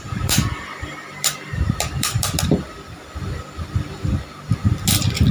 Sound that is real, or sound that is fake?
fake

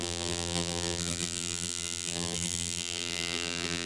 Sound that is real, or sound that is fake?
fake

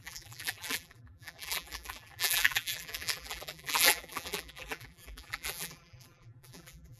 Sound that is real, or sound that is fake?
fake